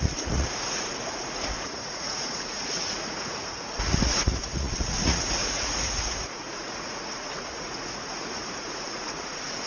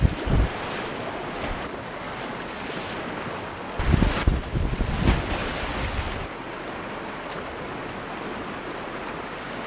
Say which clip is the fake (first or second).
first